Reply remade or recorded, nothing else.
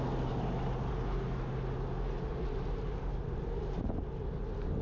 recorded